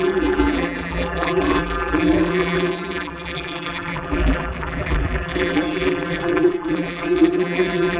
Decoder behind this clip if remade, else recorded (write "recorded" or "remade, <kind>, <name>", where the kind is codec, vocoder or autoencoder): remade, vocoder, BigVGAN v2